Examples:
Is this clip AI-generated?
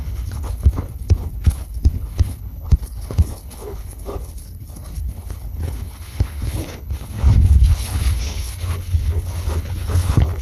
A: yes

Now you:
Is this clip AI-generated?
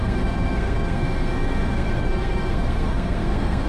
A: yes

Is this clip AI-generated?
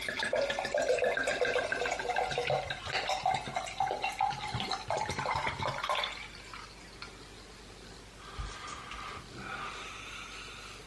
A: no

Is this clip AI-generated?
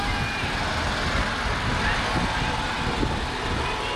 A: no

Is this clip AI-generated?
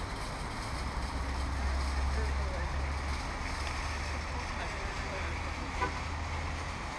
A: no